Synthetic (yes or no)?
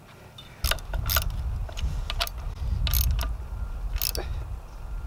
no